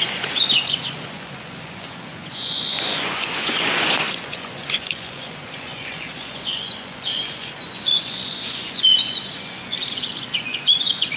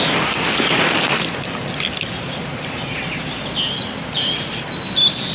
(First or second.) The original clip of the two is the second